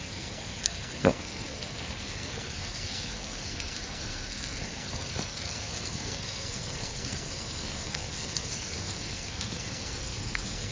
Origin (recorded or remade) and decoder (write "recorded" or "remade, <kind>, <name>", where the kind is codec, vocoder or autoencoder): remade, codec, SNAC